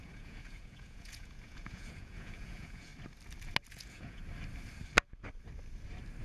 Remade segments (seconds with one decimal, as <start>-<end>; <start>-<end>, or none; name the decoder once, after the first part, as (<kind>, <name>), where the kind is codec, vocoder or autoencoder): 0.0-2.9 (vocoder, Vocos); 3.7-4.2